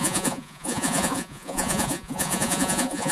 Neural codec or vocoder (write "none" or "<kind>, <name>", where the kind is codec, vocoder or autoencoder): vocoder, Vocos